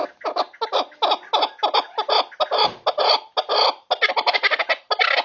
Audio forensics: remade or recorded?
recorded